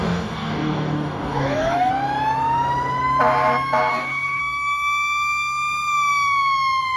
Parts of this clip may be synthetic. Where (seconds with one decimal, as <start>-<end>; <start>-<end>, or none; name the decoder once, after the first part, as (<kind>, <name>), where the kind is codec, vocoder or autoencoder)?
0.0-1.9 (codec, DAC); 3.9-4.4